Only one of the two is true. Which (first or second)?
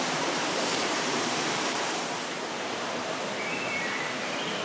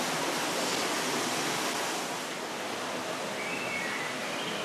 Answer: second